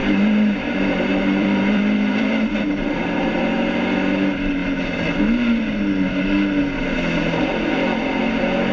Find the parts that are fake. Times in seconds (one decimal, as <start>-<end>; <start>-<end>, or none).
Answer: 0.0-3.4